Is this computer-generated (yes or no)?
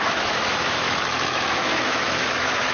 yes